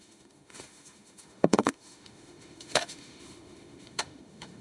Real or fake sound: fake